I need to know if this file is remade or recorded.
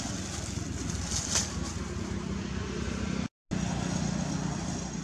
recorded